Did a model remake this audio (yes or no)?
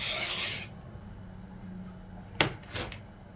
no